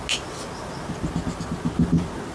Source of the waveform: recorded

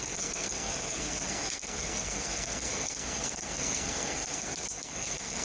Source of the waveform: remade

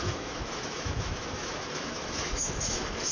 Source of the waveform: remade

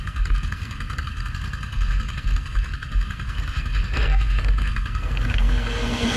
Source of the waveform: remade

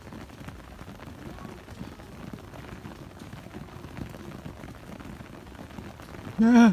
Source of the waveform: recorded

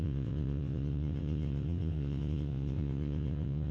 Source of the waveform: remade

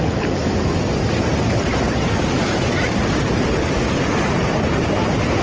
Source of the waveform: recorded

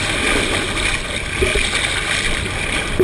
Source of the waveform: recorded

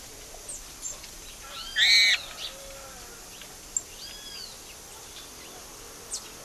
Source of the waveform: recorded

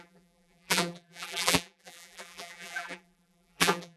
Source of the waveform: remade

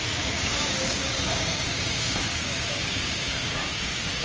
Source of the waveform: remade